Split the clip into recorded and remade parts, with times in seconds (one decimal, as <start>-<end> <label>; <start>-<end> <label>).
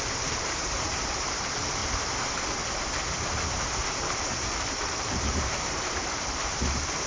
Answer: 0.0-1.8 remade; 1.8-4.5 recorded; 4.5-7.1 remade